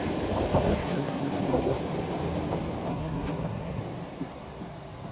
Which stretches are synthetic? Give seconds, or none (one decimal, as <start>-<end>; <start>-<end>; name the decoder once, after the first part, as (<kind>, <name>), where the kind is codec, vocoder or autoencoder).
0.7-1.8 (codec, SNAC); 2.9-3.8